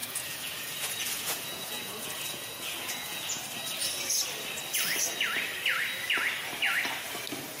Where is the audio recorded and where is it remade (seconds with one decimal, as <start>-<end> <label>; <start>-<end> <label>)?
0.0-3.4 remade; 3.4-7.6 recorded